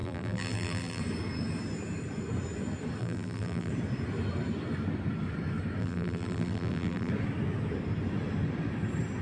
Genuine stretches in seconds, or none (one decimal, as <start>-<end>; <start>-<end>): 1.0-3.0; 3.7-5.8; 7.1-9.2